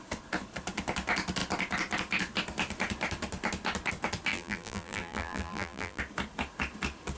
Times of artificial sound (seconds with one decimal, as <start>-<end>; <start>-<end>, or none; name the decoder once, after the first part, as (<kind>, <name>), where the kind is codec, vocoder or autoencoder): 4.3-6.0 (vocoder, BigVGAN v2)